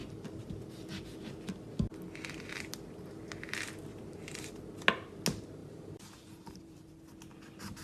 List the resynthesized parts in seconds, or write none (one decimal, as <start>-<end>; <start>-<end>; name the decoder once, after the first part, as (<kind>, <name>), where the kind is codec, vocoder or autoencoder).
3.9-4.5 (vocoder, BigVGAN v2); 5.6-6.9